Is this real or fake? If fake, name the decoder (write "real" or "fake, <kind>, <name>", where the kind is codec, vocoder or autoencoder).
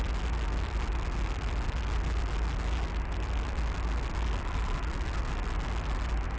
real